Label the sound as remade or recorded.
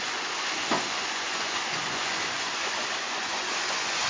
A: remade